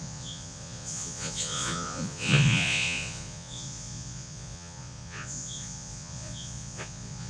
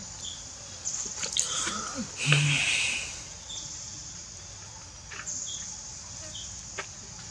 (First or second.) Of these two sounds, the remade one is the first